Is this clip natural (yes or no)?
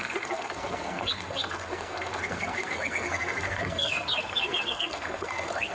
no